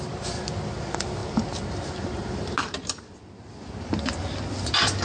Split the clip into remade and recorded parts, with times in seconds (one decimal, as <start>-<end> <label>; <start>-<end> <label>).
0.0-5.0 recorded